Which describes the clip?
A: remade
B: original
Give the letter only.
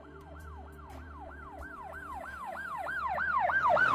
A